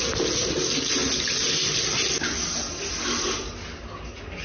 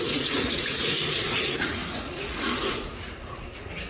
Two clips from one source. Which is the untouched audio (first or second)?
first